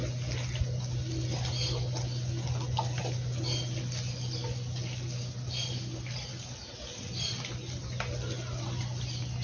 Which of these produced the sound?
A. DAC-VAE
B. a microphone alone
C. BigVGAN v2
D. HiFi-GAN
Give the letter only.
B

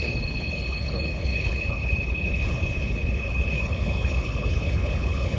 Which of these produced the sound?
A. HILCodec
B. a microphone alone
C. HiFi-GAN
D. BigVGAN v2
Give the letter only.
A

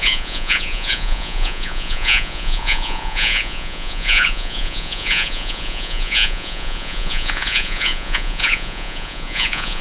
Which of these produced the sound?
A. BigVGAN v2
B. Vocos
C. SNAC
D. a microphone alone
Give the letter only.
B